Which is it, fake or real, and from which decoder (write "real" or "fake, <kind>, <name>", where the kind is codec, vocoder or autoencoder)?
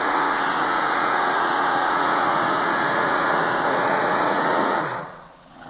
fake, vocoder, Vocos